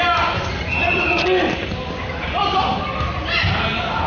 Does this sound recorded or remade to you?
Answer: recorded